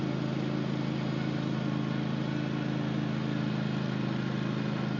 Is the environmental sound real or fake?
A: real